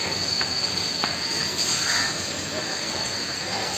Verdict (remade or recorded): remade